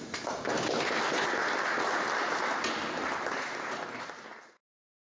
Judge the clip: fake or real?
real